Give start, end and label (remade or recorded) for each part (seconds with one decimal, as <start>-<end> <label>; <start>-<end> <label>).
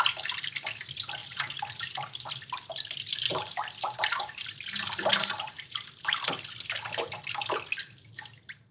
0.0-1.2 recorded; 1.2-2.3 remade; 2.3-3.3 recorded; 3.3-4.6 remade; 4.6-5.1 recorded; 5.1-6.3 remade; 6.3-8.7 recorded